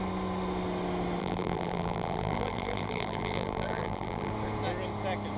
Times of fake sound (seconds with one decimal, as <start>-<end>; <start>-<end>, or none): 1.2-4.3